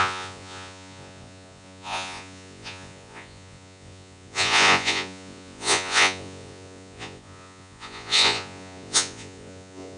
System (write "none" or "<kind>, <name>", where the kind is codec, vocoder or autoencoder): vocoder, Vocos